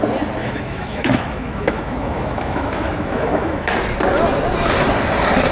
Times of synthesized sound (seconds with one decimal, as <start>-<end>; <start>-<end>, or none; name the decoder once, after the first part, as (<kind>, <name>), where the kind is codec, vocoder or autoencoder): 0.4-3.7 (autoencoder, DAC-VAE)